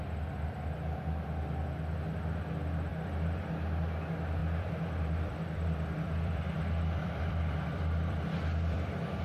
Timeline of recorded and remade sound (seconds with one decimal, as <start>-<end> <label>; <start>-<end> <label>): 0.0-2.9 recorded; 2.9-3.5 remade; 3.5-4.4 recorded; 4.4-9.2 remade